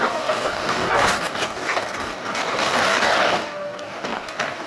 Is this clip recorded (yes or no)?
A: no